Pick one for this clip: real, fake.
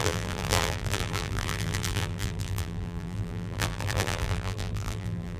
fake